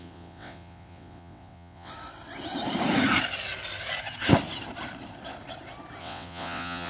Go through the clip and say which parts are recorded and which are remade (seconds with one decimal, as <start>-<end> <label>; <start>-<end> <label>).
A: 0.0-1.9 remade; 1.9-6.0 recorded; 6.0-6.9 remade